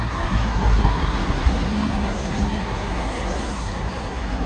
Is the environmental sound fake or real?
fake